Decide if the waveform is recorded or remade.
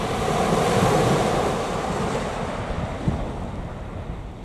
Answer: recorded